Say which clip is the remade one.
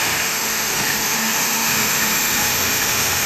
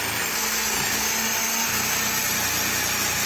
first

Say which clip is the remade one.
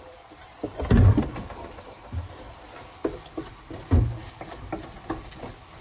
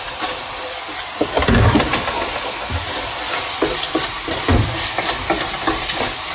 second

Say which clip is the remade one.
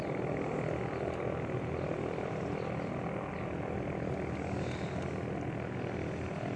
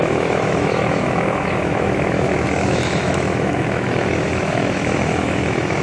second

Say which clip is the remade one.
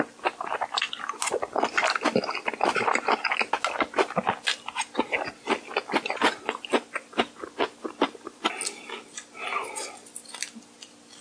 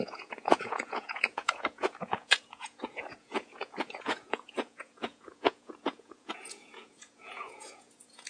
second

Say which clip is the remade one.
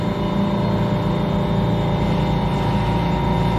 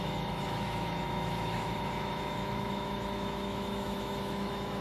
second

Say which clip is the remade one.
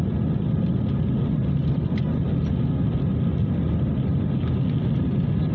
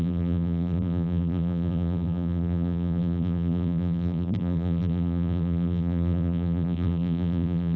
second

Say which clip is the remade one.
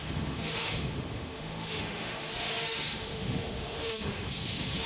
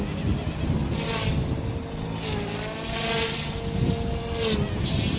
first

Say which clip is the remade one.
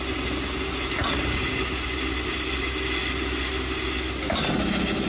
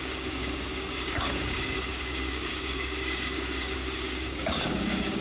second